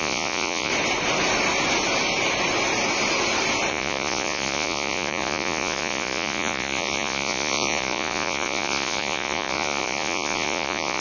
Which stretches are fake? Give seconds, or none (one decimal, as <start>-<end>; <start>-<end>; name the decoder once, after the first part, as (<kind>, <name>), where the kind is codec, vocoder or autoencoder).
0.0-0.7 (vocoder, Vocos); 3.7-11.0